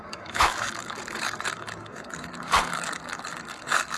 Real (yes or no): no